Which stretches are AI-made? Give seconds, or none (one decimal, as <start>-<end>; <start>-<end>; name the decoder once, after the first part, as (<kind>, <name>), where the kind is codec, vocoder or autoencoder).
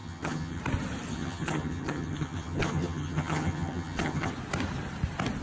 0.0-0.6 (vocoder, HiFi-GAN); 1.1-4.3